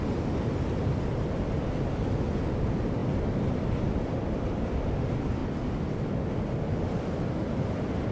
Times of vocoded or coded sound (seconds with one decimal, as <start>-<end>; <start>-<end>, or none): none